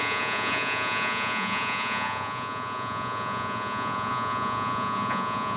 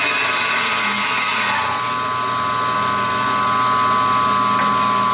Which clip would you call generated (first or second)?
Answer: first